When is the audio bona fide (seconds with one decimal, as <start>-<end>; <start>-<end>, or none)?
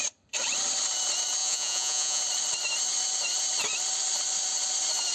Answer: 0.0-1.4; 2.2-5.1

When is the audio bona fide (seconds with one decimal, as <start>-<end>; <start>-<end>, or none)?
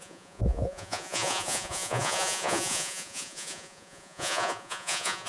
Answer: none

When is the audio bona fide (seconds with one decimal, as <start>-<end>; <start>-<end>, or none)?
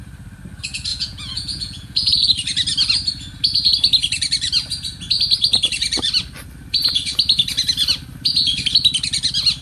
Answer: 0.0-0.9; 2.3-9.6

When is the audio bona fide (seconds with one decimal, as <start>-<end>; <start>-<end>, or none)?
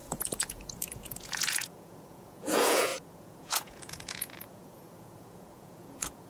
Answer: none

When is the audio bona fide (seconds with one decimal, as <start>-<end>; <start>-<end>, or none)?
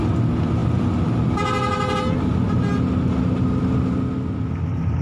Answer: 0.0-5.0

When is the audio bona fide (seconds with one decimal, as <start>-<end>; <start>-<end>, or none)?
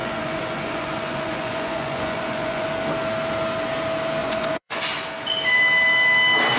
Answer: 2.7-4.2; 4.8-6.6